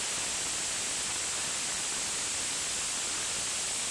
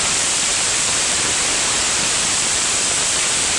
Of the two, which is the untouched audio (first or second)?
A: first